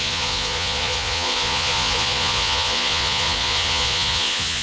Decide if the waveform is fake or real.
fake